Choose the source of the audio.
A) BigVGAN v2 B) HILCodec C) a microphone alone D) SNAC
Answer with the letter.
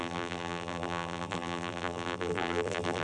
A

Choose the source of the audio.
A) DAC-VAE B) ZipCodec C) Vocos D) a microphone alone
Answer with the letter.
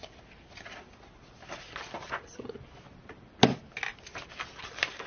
D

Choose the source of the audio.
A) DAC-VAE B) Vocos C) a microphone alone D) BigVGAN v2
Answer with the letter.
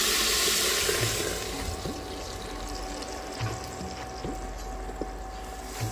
C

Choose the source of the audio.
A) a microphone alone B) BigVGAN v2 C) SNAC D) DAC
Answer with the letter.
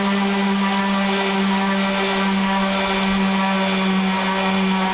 A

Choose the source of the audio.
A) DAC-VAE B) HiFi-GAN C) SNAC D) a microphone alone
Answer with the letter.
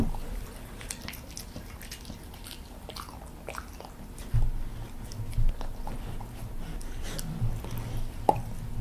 D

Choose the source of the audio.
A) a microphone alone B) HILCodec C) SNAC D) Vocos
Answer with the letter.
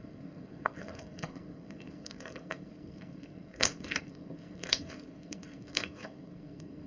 C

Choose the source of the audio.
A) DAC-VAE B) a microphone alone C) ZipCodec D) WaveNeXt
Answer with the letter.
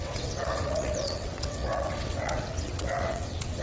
D